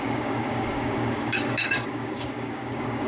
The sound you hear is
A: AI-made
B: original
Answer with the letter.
A